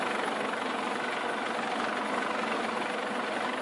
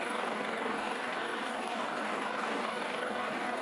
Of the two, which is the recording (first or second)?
first